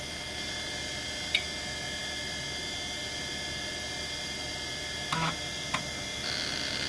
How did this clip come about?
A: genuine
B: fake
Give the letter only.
A